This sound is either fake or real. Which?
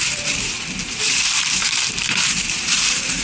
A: fake